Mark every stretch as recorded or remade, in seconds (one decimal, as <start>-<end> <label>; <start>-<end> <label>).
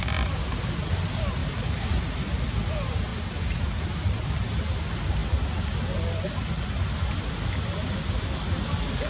0.0-1.4 recorded; 1.4-2.0 remade; 2.0-3.1 recorded; 3.1-4.8 remade; 4.8-9.1 recorded